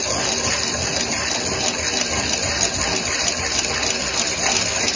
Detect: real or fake real